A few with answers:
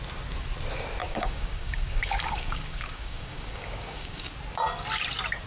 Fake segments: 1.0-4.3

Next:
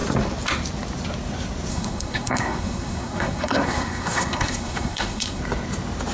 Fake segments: 1.7-5.4

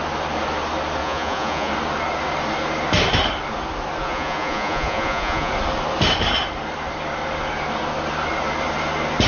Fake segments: 1.0-1.7; 4.0-5.5

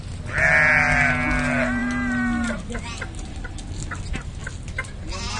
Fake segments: none

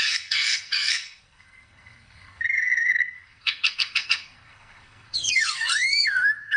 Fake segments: 0.0-6.6

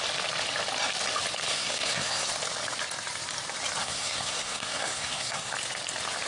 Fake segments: 1.5-2.3; 3.8-5.5